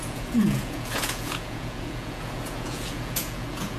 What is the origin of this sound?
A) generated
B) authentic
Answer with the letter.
A